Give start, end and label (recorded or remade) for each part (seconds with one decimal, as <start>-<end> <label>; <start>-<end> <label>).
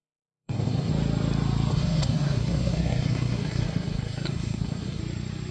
0.0-0.9 remade; 0.9-1.7 recorded; 1.7-5.0 remade; 5.0-5.5 recorded